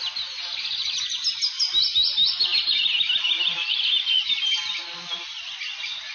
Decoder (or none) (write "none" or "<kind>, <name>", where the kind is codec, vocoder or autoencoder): none